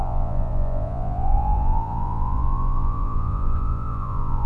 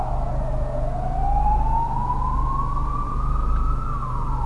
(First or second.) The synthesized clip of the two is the first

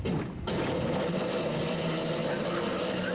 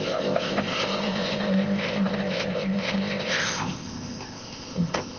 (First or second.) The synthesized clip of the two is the second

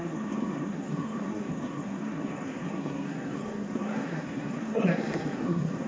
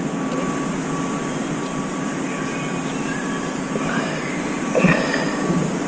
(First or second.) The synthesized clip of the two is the first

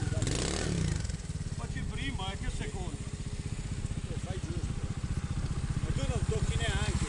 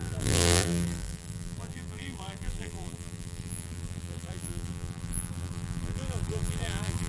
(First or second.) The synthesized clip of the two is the second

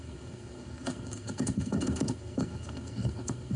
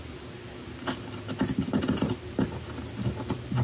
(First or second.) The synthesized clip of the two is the first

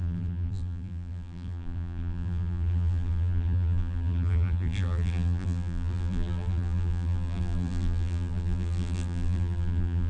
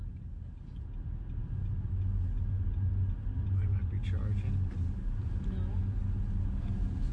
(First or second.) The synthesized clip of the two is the first